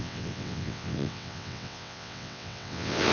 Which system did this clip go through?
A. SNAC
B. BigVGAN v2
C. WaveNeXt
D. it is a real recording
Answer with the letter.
C